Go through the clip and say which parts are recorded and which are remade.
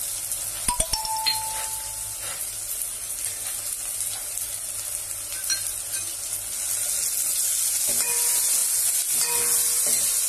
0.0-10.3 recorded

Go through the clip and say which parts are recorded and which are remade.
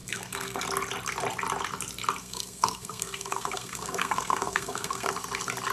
0.0-0.6 remade; 0.6-2.2 recorded; 2.2-5.1 remade; 5.1-5.7 recorded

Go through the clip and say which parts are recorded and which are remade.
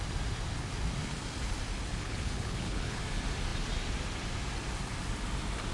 0.0-1.9 recorded; 1.9-3.0 remade; 3.0-5.7 recorded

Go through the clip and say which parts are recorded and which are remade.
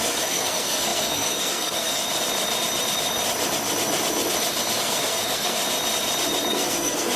0.0-2.0 remade; 2.0-4.8 recorded; 4.8-5.6 remade; 5.6-6.5 recorded; 6.5-7.2 remade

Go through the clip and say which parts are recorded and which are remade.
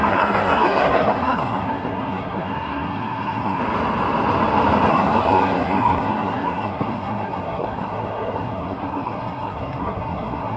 0.0-3.6 remade; 3.6-4.9 recorded; 4.9-10.6 remade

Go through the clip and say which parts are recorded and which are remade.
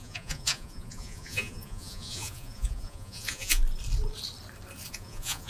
0.0-3.6 remade; 3.6-4.9 recorded; 4.9-5.5 remade